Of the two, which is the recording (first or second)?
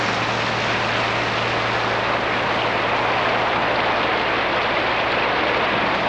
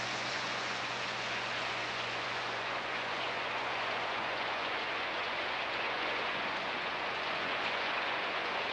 first